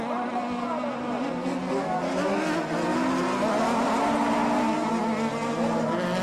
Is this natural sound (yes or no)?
yes